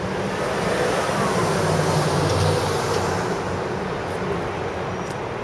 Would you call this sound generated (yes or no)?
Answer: yes